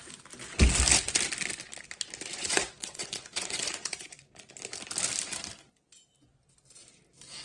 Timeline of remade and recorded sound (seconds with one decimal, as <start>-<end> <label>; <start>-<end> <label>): 0.0-2.3 recorded; 2.3-4.5 remade; 4.5-7.4 recorded